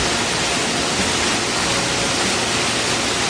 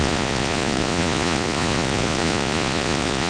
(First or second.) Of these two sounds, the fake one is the second